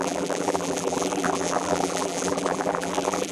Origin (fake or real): fake